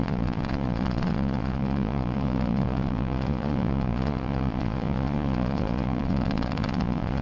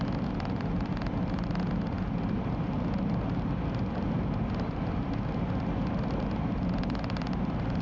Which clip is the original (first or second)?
second